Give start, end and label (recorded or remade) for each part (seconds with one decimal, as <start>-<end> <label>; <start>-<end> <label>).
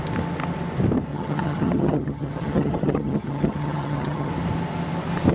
0.0-1.1 recorded; 1.1-4.3 remade; 4.3-5.3 recorded